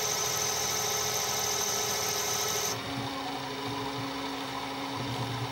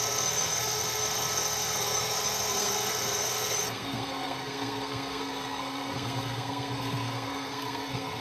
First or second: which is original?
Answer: first